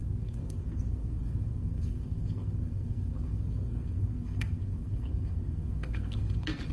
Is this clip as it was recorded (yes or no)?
no